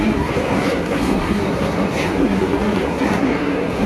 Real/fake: fake